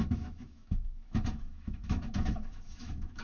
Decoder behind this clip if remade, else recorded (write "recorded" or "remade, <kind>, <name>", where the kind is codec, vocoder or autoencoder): remade, autoencoder, DAC-VAE